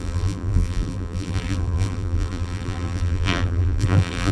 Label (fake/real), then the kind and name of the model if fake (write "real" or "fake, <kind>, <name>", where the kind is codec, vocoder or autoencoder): fake, vocoder, BigVGAN v2